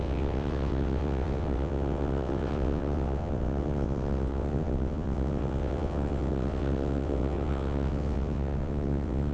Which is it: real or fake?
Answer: fake